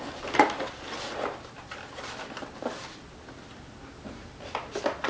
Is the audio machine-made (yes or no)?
no